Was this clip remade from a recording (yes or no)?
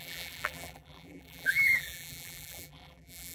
yes